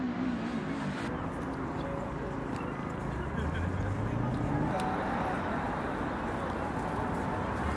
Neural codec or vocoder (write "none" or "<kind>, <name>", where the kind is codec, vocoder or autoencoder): none